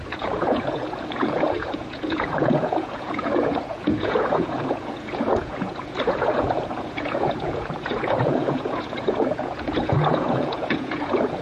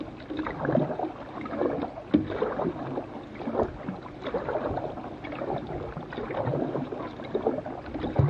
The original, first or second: second